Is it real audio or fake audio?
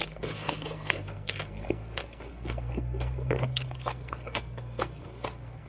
fake